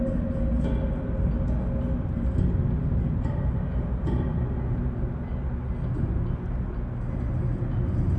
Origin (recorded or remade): recorded